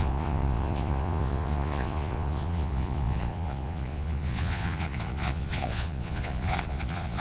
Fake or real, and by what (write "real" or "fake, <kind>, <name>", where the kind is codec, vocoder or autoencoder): fake, vocoder, Vocos